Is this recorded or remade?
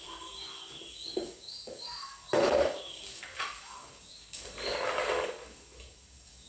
remade